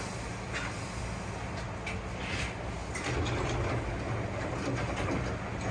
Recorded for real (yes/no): yes